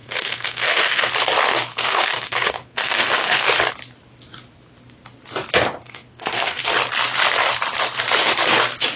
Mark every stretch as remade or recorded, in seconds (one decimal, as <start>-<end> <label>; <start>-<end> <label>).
0.0-1.1 remade; 1.1-1.7 recorded; 1.7-3.6 remade; 3.6-5.8 recorded; 5.8-6.6 remade; 6.6-9.0 recorded